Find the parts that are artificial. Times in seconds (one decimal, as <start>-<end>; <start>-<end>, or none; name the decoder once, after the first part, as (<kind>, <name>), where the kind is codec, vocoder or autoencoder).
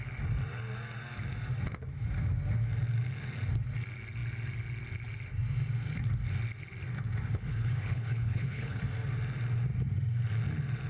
7.5-8.8 (codec, HILCodec)